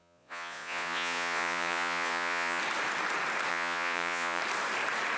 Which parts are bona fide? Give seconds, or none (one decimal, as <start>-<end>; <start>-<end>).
2.6-3.5; 4.4-5.2